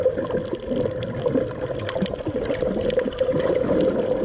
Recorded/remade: recorded